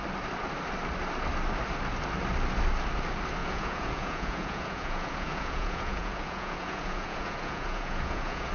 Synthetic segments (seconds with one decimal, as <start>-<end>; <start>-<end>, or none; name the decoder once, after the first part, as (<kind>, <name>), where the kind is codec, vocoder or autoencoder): 3.4-8.5 (vocoder, Vocos)